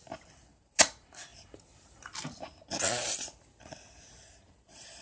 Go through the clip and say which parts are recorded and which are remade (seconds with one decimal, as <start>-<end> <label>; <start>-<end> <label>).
0.0-5.0 recorded